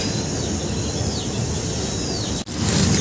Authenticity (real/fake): real